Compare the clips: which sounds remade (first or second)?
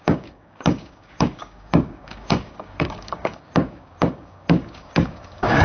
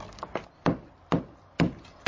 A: first